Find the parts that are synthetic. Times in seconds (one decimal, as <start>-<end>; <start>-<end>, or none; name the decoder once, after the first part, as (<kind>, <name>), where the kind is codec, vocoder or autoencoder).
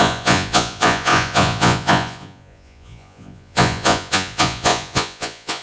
0.0-5.6 (vocoder, Vocos)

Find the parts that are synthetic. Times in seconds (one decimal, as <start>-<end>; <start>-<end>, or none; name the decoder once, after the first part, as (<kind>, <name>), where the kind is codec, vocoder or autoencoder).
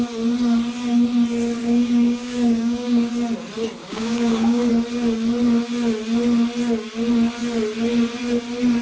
1.6-3.1 (codec, DAC); 3.8-4.7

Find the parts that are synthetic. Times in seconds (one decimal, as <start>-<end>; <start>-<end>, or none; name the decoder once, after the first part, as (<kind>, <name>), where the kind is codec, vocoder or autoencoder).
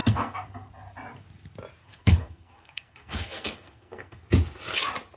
0.0-0.7 (codec, SNAC); 1.8-4.2